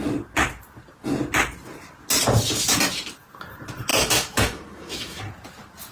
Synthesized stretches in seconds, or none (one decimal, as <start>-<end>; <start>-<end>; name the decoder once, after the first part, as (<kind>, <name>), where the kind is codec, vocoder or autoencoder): 3.9-5.2 (autoencoder, DAC-VAE)